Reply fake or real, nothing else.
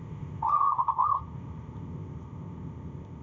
fake